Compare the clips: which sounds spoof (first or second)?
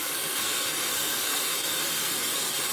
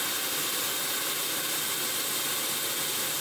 first